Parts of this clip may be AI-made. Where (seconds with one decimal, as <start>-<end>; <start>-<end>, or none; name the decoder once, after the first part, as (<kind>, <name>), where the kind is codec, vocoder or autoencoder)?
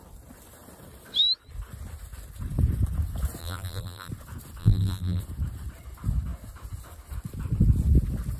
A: 3.4-4.1 (vocoder, BigVGAN v2); 4.6-5.2